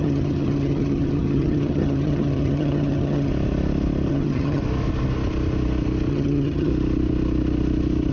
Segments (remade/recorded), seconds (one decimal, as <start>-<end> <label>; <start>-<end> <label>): 0.0-3.3 remade; 3.3-4.1 recorded; 4.1-4.6 remade; 4.6-6.1 recorded; 6.1-6.7 remade; 6.7-8.1 recorded